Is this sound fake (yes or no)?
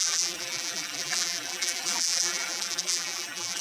yes